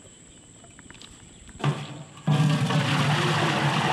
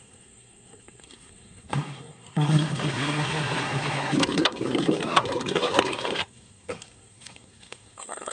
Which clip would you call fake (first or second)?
second